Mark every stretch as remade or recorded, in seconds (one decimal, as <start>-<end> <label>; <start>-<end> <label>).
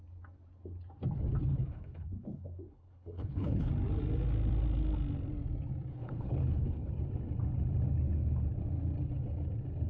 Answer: 0.0-1.5 recorded; 1.5-3.7 remade; 3.7-5.9 recorded; 5.9-6.9 remade; 6.9-9.9 recorded